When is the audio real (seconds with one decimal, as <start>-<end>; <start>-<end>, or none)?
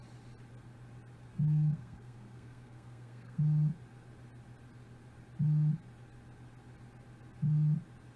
0.0-1.3; 3.4-8.2